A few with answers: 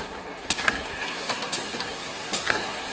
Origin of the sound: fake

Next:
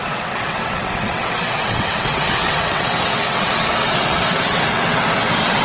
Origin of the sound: fake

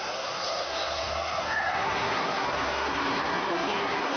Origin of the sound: fake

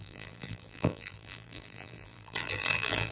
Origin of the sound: fake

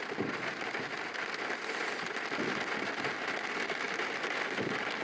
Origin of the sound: real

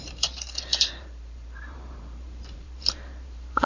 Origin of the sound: fake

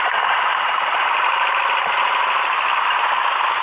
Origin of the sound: real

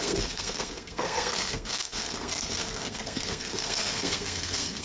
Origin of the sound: fake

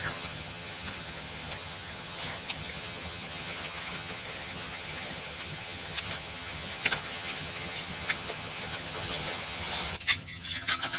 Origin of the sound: fake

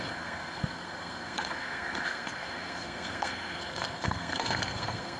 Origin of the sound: fake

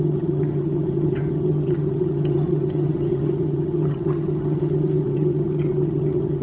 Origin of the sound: fake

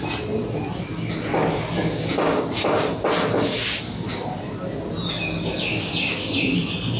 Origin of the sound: real